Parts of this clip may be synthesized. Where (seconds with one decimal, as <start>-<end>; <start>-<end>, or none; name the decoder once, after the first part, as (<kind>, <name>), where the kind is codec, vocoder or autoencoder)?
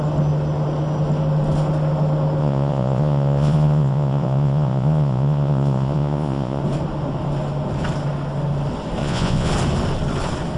2.4-6.6 (vocoder, Vocos); 9.0-9.5